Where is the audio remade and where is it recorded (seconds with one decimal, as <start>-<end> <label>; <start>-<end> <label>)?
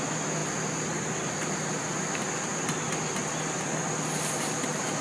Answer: 0.0-5.0 recorded